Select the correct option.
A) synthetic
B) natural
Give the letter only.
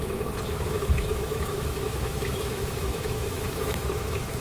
A